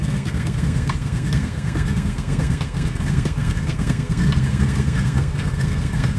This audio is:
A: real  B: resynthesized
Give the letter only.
B